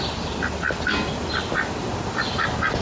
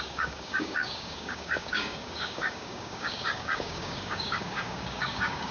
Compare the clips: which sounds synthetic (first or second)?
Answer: second